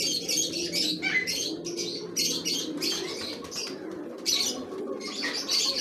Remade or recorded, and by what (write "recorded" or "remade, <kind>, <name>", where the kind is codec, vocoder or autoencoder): recorded